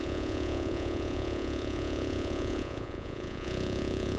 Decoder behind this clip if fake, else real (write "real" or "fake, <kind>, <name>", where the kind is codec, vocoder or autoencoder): fake, vocoder, Vocos